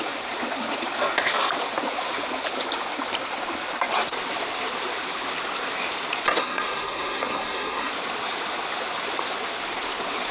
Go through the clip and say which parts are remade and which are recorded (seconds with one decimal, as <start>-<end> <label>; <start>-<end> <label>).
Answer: 0.0-6.4 recorded; 6.4-7.9 remade; 7.9-10.3 recorded